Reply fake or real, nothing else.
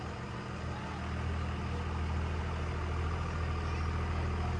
real